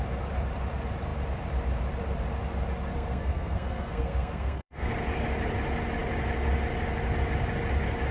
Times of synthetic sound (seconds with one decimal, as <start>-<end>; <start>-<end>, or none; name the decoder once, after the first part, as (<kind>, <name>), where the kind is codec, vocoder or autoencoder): 2.9-4.9 (codec, SNAC)